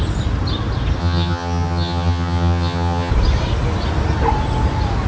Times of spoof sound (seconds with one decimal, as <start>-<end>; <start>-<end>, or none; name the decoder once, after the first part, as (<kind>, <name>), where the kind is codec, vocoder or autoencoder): 1.0-3.1 (vocoder, HiFi-GAN)